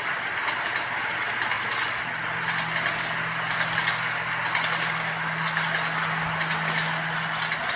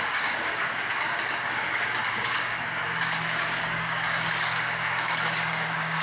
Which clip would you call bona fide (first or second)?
first